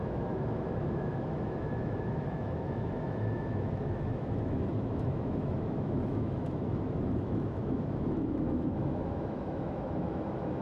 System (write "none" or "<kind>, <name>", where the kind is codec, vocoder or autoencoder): autoencoder, DAC-VAE